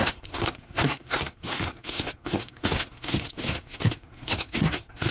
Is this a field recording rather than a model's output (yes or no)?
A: no